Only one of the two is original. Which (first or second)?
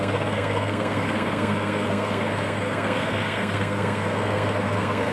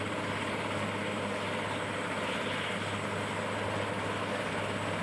second